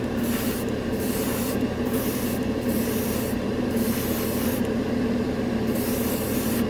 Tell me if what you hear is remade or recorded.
recorded